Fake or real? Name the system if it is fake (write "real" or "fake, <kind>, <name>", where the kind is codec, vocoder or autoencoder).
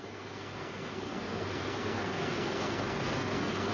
fake, codec, SNAC